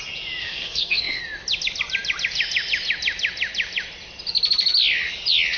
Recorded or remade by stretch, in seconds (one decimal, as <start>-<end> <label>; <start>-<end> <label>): 0.0-0.4 recorded; 0.4-1.2 remade; 1.2-5.6 recorded